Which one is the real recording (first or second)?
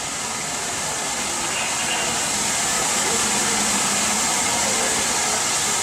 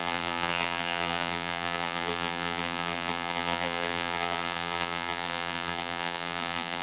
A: first